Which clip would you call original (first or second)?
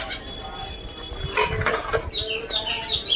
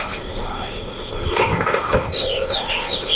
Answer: first